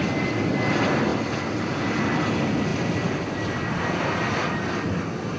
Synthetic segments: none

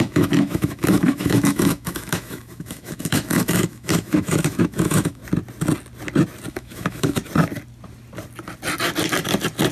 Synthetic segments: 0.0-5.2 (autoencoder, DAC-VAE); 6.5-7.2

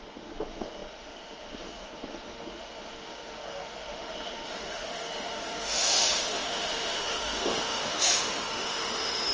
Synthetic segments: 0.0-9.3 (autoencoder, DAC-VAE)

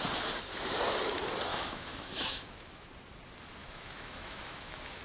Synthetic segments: 1.5-2.9 (autoencoder, DAC-VAE); 3.6-5.0